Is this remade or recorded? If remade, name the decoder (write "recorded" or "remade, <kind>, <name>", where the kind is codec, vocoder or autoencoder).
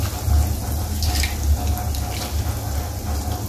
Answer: recorded